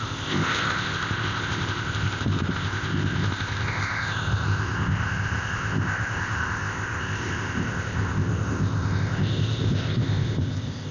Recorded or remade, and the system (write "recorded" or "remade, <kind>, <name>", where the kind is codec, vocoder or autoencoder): remade, codec, ZipCodec